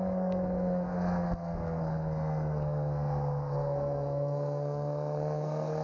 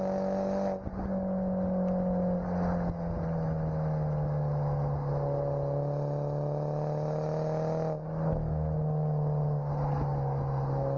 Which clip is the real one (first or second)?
second